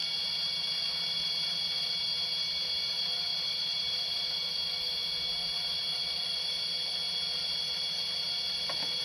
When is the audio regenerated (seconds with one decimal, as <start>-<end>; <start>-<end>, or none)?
5.9-6.4